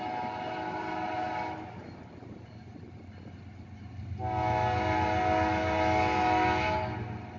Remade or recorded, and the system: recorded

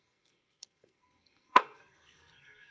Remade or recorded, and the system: remade, codec, SNAC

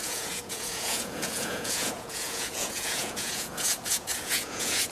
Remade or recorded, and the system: remade, vocoder, Vocos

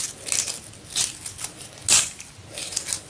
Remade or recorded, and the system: recorded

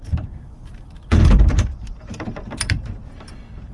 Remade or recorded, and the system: remade, vocoder, BigVGAN v2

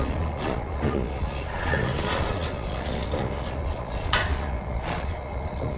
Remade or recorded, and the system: remade, vocoder, Vocos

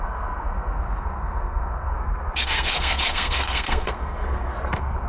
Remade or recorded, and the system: remade, codec, SNAC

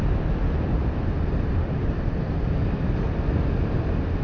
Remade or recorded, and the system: recorded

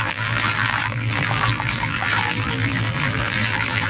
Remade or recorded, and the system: remade, vocoder, BigVGAN v2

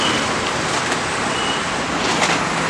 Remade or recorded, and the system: recorded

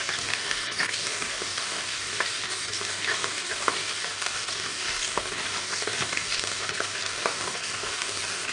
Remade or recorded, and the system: remade, codec, DAC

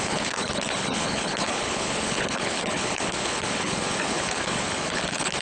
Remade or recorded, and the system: remade, codec, HILCodec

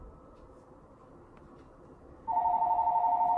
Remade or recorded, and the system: recorded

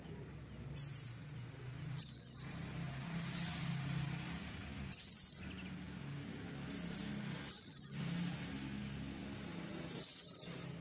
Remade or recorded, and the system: recorded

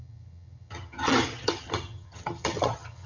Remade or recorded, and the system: remade, vocoder, HiFi-GAN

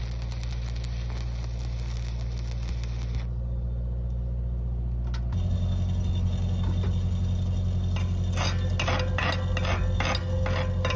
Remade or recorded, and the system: recorded